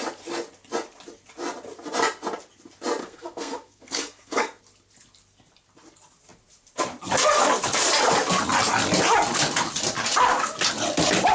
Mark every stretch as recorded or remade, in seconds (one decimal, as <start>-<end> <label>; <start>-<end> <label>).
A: 0.0-3.0 recorded; 3.0-4.6 remade; 4.6-11.3 recorded